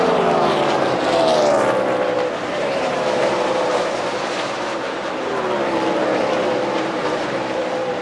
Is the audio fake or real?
fake